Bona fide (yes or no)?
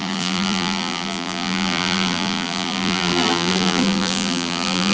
no